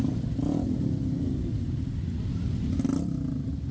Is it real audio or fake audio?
real